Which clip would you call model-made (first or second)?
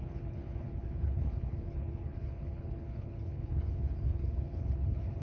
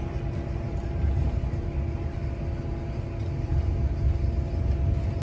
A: first